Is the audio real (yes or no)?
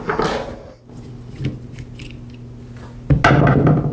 yes